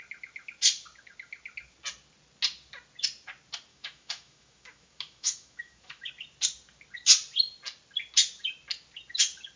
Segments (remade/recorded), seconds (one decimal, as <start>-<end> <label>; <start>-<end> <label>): 0.0-3.7 recorded; 3.7-6.1 remade; 6.1-9.6 recorded